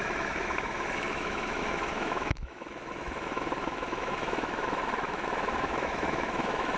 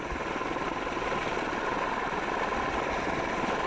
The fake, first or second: first